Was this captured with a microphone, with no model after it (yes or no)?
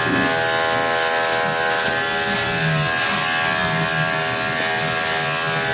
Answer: yes